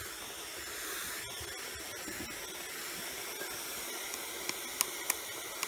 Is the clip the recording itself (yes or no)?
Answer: yes